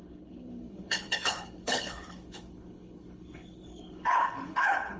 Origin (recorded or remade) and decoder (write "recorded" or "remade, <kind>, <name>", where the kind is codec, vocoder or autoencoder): remade, codec, HILCodec